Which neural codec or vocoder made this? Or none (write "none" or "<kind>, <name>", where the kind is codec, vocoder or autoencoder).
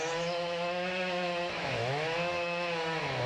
autoencoder, DAC-VAE